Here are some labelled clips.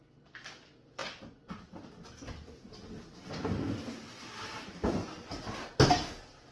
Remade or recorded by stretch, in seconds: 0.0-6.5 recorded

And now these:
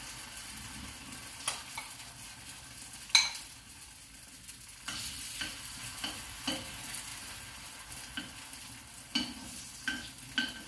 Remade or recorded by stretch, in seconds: 0.0-10.7 recorded